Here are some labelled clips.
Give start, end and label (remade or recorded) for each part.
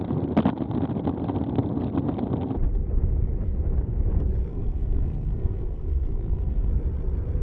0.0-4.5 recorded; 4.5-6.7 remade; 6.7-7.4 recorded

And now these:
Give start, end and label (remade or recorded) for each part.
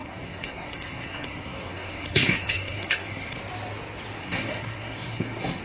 0.0-3.4 remade; 3.4-4.2 recorded; 4.2-5.6 remade